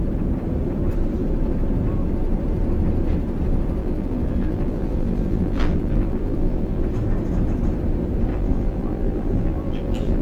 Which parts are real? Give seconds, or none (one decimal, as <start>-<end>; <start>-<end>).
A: 0.0-3.8; 6.8-8.3

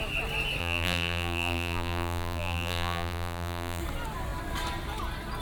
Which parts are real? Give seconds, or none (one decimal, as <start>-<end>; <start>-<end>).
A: 0.0-0.6; 3.8-5.4

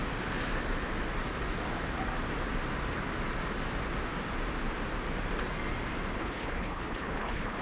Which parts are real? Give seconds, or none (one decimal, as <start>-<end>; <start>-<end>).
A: 0.0-6.2

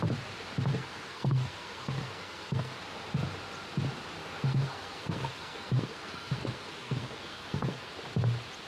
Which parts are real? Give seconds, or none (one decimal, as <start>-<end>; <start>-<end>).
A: 0.0-0.7; 2.8-4.2; 7.9-8.7

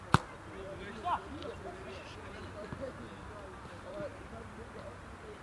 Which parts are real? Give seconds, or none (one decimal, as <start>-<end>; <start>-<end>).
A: 0.0-4.1; 4.7-5.4